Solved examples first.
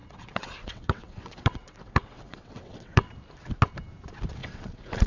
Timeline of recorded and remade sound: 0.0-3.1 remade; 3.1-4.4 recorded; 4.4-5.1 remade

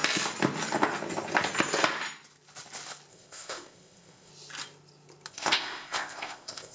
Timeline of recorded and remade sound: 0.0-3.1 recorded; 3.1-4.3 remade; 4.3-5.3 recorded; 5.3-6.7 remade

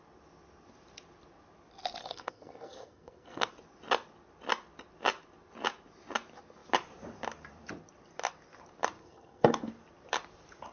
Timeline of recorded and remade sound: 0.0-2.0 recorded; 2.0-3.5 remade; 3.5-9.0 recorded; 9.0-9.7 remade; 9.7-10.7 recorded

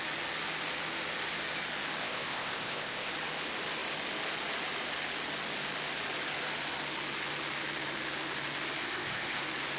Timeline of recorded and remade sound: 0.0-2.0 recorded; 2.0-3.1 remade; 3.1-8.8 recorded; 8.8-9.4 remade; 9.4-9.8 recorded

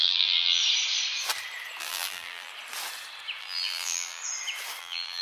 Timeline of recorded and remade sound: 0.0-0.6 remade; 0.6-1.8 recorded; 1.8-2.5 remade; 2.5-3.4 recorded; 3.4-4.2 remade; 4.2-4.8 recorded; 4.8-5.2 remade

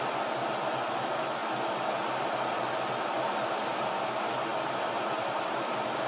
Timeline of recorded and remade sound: 0.0-6.1 recorded